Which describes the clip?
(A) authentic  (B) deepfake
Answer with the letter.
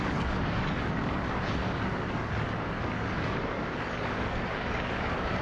B